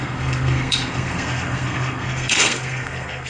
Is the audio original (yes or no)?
no